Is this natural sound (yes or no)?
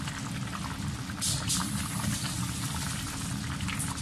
yes